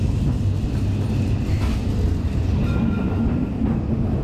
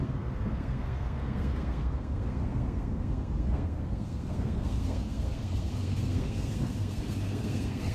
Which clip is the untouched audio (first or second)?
first